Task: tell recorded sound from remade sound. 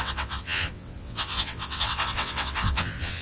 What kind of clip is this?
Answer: remade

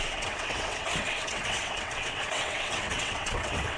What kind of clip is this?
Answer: remade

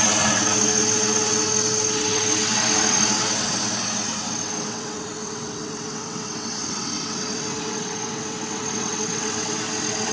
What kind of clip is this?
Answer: remade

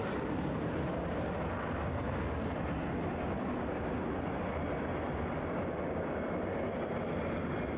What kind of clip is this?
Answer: recorded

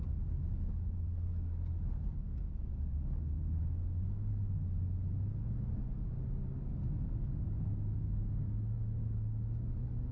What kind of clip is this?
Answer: recorded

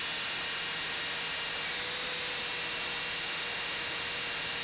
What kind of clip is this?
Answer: recorded